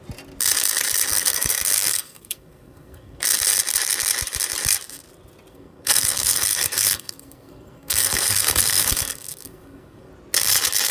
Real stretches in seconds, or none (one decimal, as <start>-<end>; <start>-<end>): 0.0-1.1; 3.2-5.5; 10.1-10.9